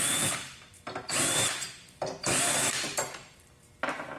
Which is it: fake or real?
fake